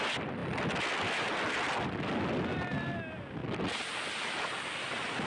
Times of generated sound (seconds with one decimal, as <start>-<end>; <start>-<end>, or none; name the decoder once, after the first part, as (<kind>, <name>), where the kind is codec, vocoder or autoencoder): 0.0-3.4 (vocoder, BigVGAN v2); 4.4-5.3